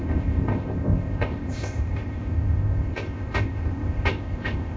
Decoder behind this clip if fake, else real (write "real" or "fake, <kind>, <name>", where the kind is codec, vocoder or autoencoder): fake, codec, ZipCodec